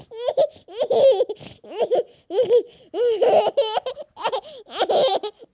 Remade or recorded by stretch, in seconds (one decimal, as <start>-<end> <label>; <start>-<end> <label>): 0.0-5.5 recorded